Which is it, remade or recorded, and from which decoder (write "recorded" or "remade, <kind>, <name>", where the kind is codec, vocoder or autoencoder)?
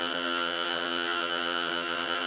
remade, vocoder, HiFi-GAN